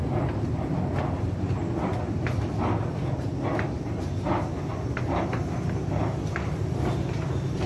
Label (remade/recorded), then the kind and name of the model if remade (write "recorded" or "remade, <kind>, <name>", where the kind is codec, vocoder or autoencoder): recorded